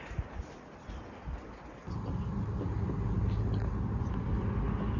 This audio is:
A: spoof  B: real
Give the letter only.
B